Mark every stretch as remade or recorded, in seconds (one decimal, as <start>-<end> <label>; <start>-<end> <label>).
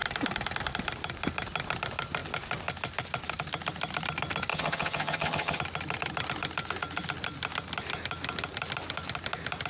0.0-4.5 recorded; 4.5-5.6 remade; 5.6-9.7 recorded